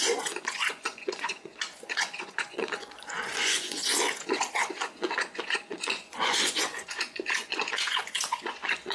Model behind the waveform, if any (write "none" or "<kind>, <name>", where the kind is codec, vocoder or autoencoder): vocoder, Vocos